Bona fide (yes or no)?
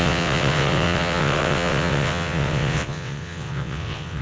no